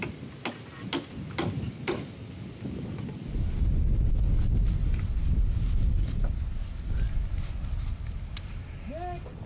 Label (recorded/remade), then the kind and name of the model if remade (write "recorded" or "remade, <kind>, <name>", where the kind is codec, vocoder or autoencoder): recorded